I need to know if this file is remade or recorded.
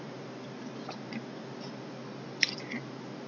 recorded